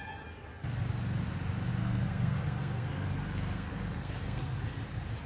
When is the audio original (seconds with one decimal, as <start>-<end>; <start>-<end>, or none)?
0.0-1.8; 4.6-5.3